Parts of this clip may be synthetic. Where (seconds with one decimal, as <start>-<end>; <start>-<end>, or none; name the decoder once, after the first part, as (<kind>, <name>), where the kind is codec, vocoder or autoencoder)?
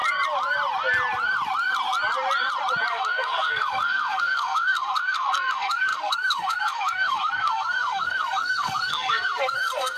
2.9-10.0 (codec, SNAC)